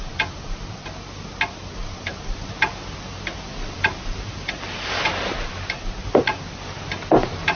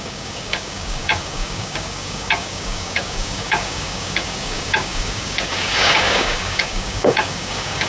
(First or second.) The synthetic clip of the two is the second